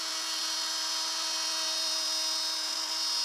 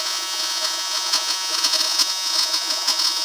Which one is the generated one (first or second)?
second